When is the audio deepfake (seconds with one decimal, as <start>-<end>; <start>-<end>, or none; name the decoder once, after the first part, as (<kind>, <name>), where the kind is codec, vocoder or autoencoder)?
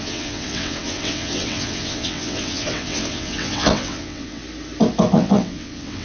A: 0.0-4.4 (vocoder, WaveNeXt); 5.1-6.0